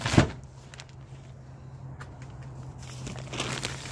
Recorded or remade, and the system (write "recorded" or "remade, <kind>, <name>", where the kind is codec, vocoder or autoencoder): recorded